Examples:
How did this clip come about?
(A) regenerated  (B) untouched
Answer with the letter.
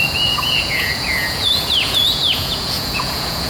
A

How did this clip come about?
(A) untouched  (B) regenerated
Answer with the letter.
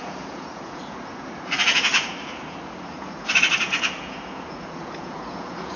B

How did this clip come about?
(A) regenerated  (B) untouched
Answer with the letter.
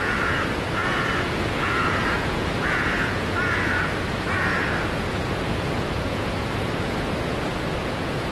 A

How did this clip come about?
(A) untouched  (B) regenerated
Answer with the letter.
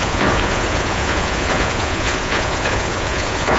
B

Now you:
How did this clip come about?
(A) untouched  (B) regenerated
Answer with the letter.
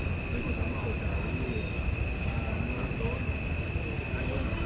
A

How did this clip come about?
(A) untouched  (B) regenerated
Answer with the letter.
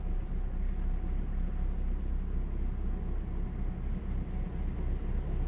A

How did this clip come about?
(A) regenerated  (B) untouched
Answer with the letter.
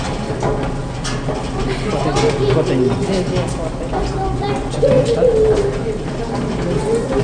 B